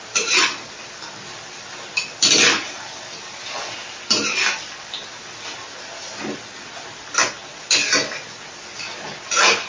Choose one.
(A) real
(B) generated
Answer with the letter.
A